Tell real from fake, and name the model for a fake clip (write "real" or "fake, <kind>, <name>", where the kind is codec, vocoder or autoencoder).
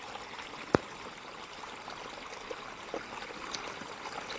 real